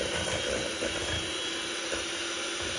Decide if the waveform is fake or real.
real